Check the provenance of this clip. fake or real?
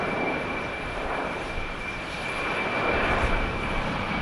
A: fake